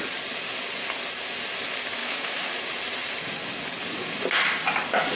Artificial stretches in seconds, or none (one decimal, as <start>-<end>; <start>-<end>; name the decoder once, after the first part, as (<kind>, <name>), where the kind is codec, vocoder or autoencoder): 2.0-2.5 (autoencoder, DAC-VAE)